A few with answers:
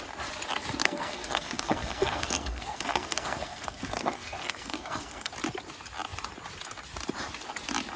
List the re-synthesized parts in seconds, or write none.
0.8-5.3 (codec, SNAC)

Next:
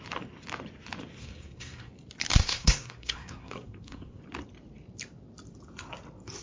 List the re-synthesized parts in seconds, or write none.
1.2-1.9 (codec, SNAC); 2.4-4.2